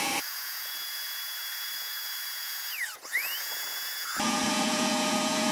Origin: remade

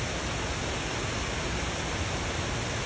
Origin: recorded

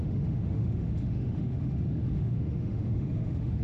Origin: remade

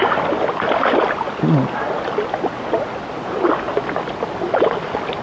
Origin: recorded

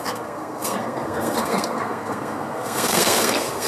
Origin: remade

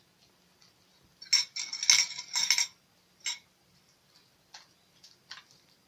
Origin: recorded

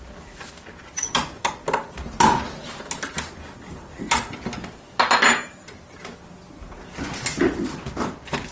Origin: recorded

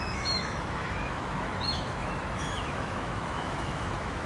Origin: remade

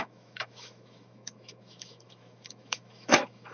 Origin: remade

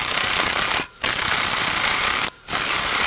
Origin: remade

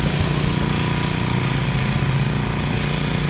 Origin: recorded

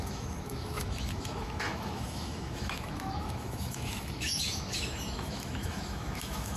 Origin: remade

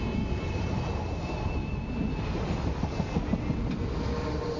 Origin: recorded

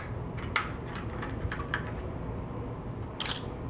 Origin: recorded